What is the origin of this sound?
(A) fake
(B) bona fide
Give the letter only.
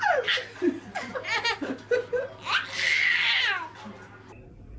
B